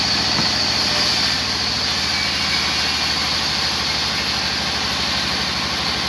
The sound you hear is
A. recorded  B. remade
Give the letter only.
A